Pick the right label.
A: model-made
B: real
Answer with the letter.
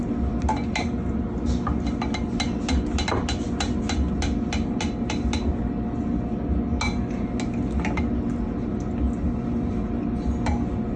B